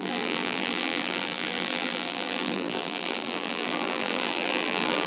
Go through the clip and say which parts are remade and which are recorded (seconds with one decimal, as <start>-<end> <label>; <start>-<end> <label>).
0.0-5.1 remade